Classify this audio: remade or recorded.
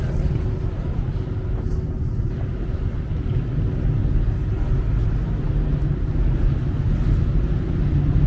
recorded